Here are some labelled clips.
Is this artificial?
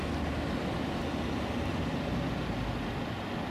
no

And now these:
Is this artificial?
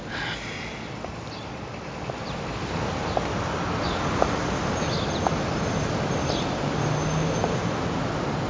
no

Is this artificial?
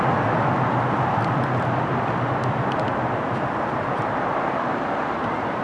no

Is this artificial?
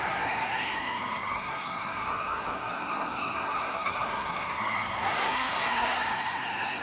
yes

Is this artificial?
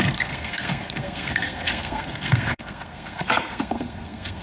yes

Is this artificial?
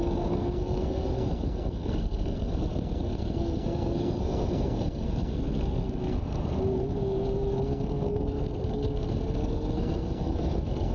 yes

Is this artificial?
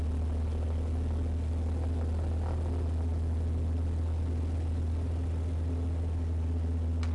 no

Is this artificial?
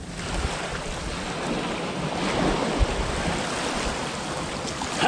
no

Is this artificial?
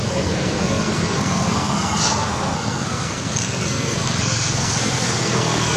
yes